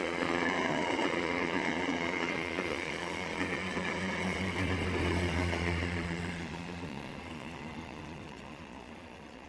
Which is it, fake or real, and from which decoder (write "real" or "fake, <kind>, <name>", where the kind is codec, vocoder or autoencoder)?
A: fake, vocoder, Vocos